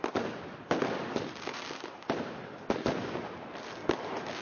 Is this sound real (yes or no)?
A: yes